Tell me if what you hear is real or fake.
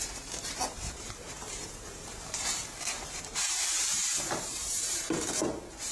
fake